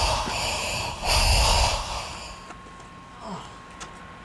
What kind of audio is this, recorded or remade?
recorded